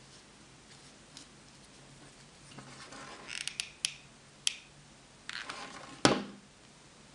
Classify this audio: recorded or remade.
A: recorded